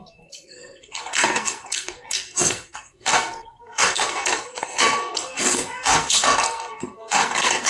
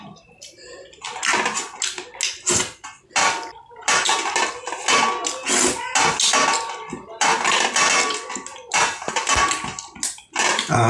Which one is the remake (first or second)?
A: first